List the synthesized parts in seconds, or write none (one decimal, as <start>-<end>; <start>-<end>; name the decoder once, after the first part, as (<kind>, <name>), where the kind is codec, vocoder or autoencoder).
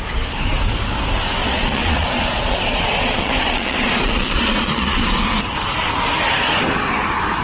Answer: 1.4-5.1 (vocoder, Vocos)